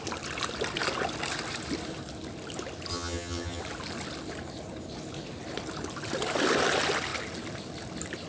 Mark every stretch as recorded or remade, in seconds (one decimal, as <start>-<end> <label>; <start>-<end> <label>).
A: 0.0-2.9 recorded; 2.9-3.6 remade; 3.6-8.3 recorded

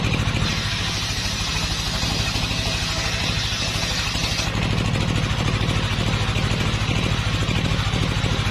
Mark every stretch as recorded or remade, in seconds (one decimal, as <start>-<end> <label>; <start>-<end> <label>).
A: 0.0-8.5 recorded

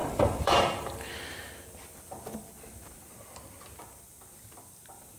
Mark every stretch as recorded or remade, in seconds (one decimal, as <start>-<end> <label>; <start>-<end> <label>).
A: 0.0-1.1 remade; 1.1-5.2 recorded